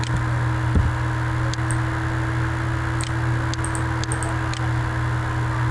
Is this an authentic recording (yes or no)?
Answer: yes